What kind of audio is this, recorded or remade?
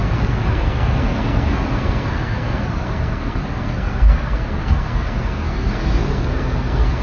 remade